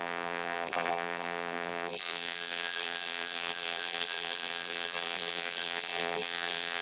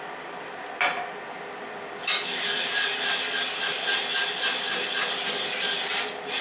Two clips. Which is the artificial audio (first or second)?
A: first